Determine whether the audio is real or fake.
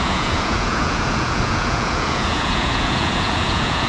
fake